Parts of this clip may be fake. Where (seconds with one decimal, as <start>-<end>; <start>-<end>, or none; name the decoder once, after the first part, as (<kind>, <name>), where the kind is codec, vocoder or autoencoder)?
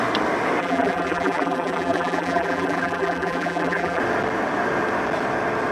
0.6-4.0 (vocoder, BigVGAN v2)